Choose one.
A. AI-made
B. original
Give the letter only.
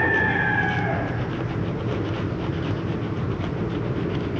B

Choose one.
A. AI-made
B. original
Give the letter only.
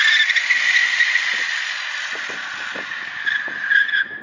B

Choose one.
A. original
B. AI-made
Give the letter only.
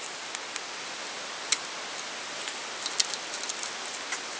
A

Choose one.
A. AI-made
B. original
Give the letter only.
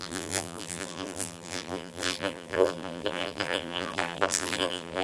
A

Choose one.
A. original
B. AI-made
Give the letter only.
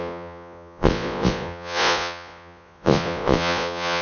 B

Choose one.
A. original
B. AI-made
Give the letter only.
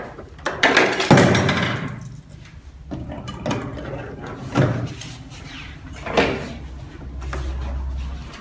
A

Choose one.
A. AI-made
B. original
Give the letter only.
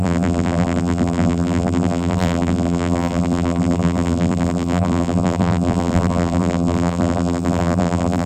A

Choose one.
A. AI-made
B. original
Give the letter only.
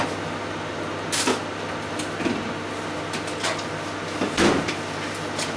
B